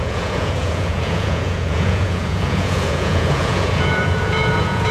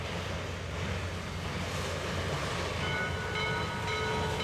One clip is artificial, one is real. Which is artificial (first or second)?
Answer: first